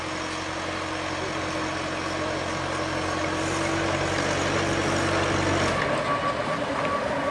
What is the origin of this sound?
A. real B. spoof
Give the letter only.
A